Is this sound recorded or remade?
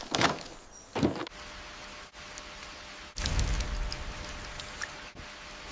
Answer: recorded